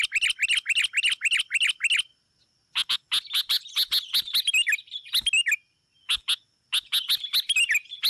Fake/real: real